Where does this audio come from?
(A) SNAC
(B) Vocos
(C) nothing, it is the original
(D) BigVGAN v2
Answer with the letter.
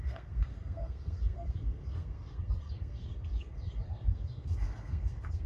A